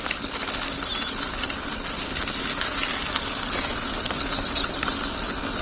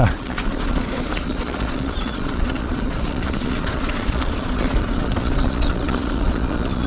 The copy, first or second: second